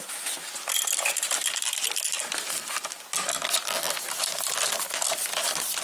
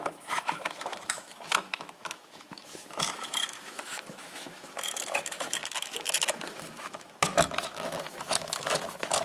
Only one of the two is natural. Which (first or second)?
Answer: first